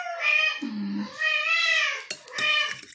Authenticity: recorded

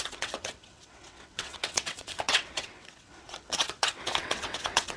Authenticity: remade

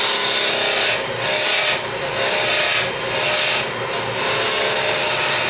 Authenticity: recorded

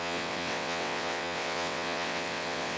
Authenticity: remade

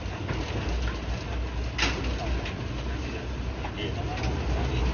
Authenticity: recorded